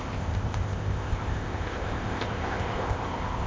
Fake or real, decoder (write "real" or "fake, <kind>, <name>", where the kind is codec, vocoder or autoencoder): fake, codec, ZipCodec